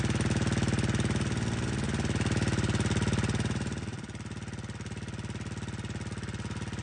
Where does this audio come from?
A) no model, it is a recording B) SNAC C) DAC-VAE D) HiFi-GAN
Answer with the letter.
A